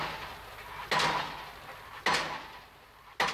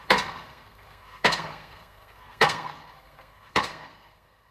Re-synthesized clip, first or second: second